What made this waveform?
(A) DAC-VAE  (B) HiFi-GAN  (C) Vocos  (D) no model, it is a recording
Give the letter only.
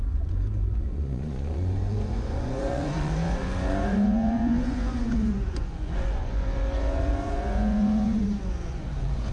C